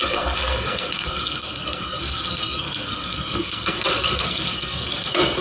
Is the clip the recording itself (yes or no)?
no